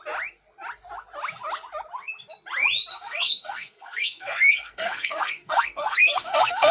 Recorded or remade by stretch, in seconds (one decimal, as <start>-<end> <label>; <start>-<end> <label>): 0.0-2.9 recorded; 2.9-6.7 remade